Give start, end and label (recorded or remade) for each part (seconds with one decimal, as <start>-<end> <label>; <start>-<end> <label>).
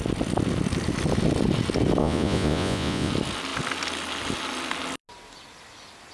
0.0-2.0 recorded; 2.0-3.1 remade; 3.1-6.1 recorded